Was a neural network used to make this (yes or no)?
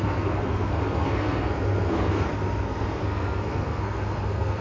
yes